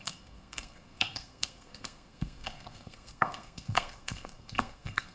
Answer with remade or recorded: remade